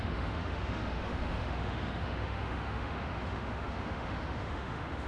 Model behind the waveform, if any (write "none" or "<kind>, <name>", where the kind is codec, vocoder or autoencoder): autoencoder, DAC-VAE